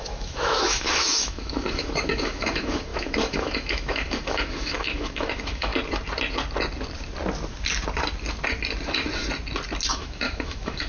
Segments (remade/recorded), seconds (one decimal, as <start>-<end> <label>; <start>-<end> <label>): 0.0-5.7 remade; 5.7-9.9 recorded; 9.9-10.9 remade